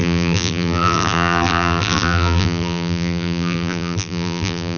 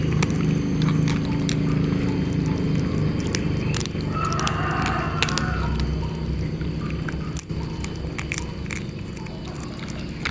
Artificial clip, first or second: first